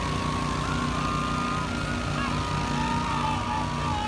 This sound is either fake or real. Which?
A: real